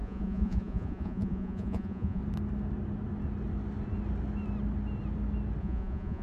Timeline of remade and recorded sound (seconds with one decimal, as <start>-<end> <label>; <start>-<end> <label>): 0.0-2.2 remade; 2.2-5.6 recorded; 5.6-6.2 remade